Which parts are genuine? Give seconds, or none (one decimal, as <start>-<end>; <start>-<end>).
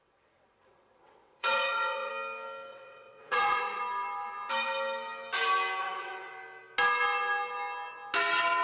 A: 2.1-2.7; 3.8-5.8; 6.3-8.6